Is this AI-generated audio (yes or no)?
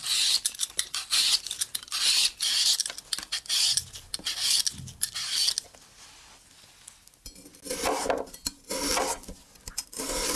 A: no